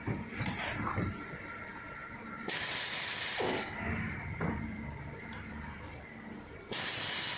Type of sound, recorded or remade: remade